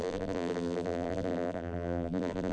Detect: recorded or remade remade